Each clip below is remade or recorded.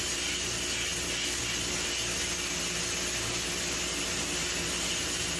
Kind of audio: recorded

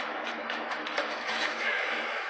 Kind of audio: remade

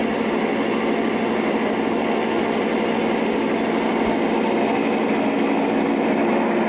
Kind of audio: recorded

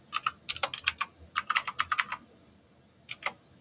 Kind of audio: recorded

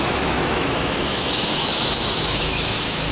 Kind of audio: remade